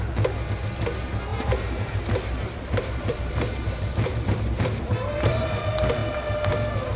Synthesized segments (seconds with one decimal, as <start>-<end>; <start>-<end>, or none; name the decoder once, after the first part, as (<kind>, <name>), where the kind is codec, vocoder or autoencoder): 1.3-5.5 (vocoder, BigVGAN v2)